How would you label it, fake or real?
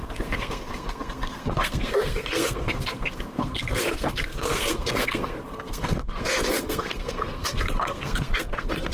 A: fake